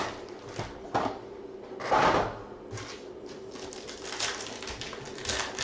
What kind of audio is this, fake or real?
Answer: real